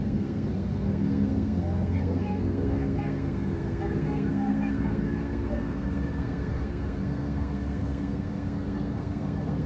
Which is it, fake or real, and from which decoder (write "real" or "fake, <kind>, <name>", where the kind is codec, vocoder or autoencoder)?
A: fake, codec, SNAC